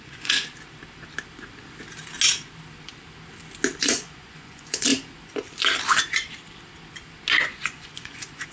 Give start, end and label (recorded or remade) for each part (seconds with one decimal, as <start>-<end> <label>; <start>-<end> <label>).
0.0-0.5 remade; 0.5-3.8 recorded; 3.8-4.9 remade; 4.9-7.4 recorded; 7.4-8.5 remade